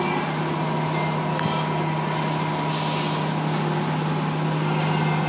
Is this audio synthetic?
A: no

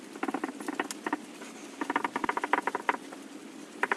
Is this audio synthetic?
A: no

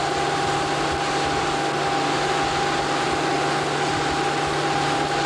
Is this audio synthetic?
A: no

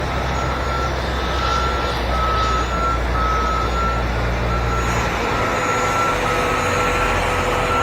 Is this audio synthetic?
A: no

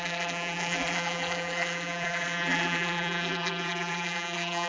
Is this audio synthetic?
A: yes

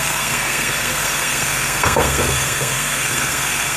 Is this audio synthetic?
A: yes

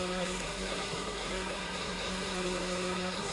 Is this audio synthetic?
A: yes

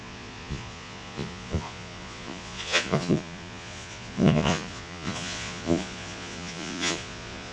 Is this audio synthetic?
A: yes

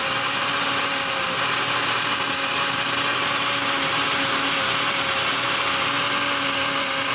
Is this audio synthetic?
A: no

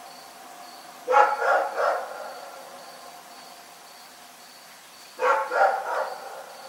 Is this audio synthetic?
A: no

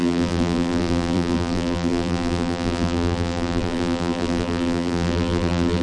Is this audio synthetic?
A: yes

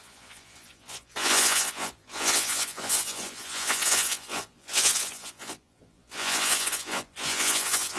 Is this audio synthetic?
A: yes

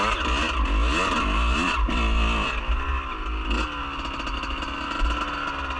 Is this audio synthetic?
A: no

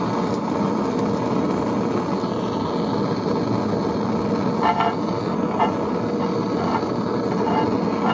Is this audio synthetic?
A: no